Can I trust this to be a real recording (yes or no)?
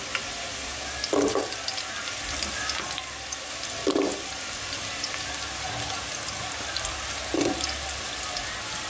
yes